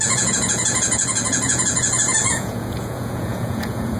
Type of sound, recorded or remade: remade